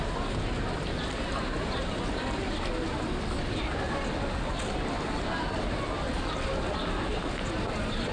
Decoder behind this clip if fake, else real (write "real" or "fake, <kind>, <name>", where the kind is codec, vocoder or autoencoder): real